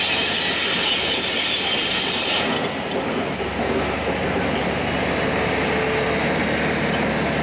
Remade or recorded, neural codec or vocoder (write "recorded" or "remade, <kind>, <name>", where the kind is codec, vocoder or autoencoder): recorded